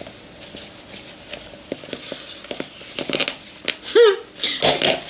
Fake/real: real